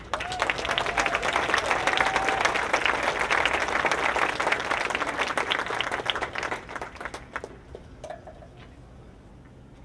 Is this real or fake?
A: real